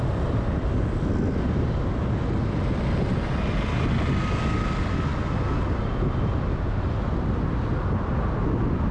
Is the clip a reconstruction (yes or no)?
no